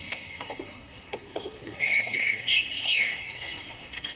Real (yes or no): no